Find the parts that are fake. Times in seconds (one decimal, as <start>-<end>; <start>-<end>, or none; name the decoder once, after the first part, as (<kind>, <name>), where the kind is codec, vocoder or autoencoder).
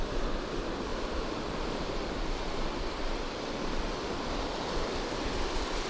0.9-4.4 (vocoder, BigVGAN v2)